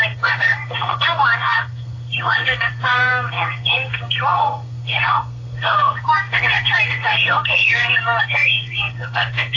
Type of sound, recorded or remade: remade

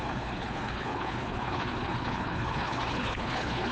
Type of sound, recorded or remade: remade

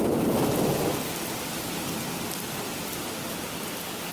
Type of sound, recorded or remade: recorded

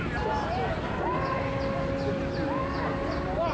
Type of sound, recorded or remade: recorded